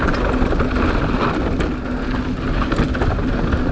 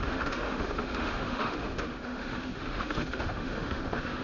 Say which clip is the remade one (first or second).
second